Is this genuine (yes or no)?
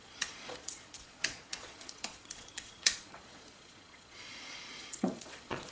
no